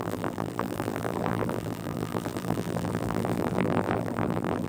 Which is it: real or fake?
fake